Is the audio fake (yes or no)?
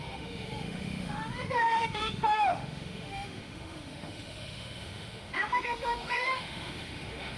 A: yes